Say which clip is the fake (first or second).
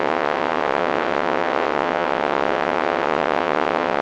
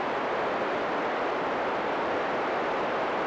first